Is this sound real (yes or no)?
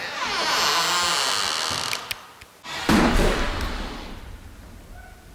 yes